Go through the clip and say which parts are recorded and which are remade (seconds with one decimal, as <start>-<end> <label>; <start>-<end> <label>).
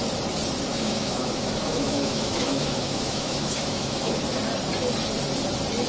0.0-0.7 recorded; 0.7-4.2 remade; 4.2-5.9 recorded